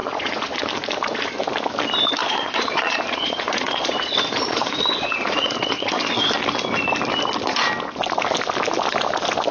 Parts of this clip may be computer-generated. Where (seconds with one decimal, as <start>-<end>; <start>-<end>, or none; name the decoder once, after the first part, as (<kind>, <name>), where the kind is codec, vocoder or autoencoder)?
0.0-0.6 (vocoder, Vocos); 2.2-6.2